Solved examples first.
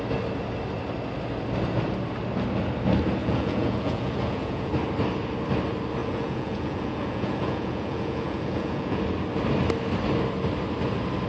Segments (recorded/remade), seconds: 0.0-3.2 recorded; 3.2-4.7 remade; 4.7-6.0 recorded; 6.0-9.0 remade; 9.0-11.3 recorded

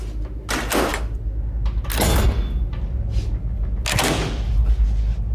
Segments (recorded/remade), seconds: 0.0-5.3 recorded

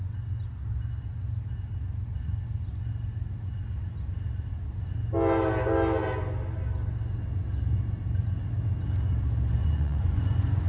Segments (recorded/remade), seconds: 0.0-9.6 recorded; 9.6-10.7 remade